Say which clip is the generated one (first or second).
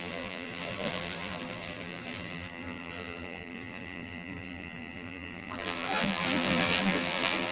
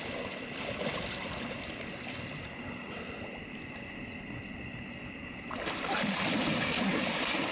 first